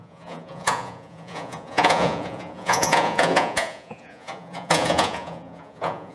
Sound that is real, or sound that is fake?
fake